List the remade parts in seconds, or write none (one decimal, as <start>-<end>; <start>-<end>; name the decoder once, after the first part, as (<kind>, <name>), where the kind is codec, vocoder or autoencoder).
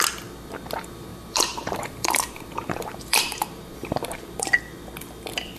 1.1-4.5 (vocoder, BigVGAN v2)